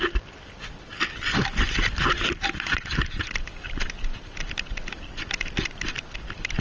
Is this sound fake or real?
real